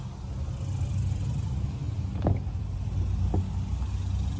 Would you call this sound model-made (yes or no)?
no